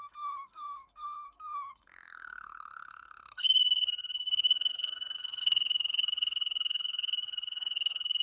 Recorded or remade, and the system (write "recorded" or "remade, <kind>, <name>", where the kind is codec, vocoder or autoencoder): remade, codec, SNAC